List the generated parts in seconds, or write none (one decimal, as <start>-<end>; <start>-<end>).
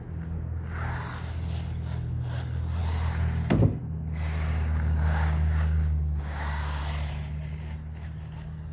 4.5-6.8